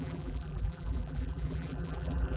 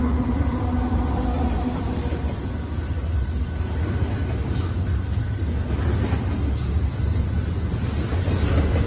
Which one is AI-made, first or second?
first